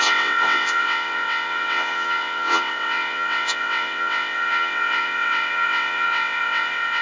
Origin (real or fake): fake